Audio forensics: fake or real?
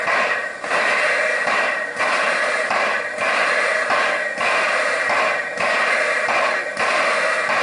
real